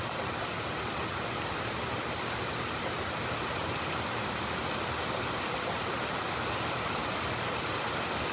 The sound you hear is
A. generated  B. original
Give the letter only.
B